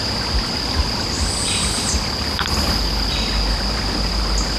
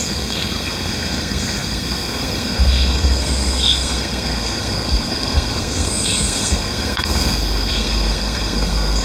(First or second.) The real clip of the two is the first